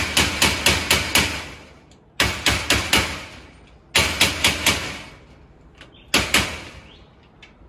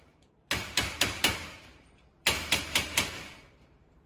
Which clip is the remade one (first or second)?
second